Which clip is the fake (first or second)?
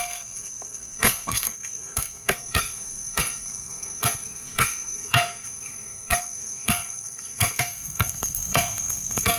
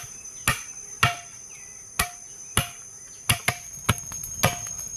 first